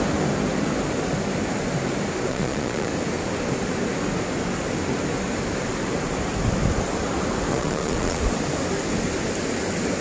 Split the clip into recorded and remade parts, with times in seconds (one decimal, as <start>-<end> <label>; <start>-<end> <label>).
0.0-2.3 recorded; 2.3-2.9 remade; 2.9-7.5 recorded; 7.5-8.2 remade; 8.2-10.0 recorded